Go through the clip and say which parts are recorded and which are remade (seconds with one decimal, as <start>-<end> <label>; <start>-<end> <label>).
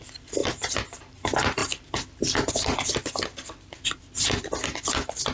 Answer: 0.0-5.3 recorded